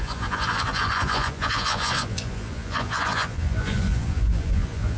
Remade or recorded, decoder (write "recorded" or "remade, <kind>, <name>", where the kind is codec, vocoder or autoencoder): remade, vocoder, Vocos